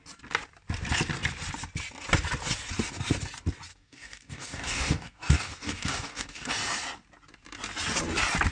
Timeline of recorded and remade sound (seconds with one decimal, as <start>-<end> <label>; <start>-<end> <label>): 0.0-3.7 recorded; 3.7-6.5 remade; 6.5-8.5 recorded